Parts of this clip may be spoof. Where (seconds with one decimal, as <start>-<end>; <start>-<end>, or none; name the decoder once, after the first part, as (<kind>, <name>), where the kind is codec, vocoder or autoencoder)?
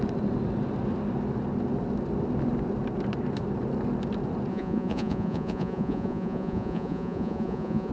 4.5-7.9 (vocoder, Vocos)